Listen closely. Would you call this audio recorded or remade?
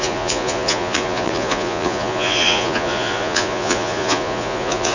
remade